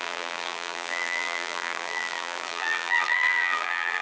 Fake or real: fake